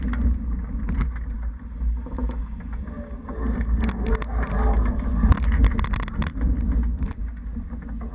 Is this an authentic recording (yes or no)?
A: yes